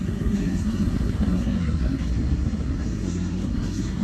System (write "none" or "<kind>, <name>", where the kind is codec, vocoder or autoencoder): codec, SNAC